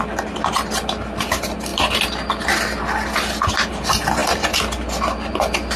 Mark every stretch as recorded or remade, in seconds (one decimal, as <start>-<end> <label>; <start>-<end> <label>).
0.0-5.8 recorded